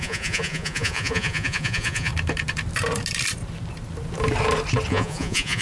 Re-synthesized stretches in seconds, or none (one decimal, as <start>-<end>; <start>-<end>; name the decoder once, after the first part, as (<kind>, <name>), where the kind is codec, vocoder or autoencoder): 0.0-2.1 (vocoder, Vocos); 4.9-5.6